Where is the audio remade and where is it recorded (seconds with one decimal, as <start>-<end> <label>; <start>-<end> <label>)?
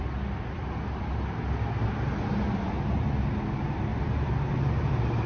0.0-5.3 recorded